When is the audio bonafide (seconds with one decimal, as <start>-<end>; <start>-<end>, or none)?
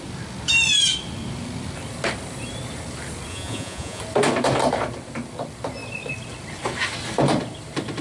0.0-3.3; 4.0-8.0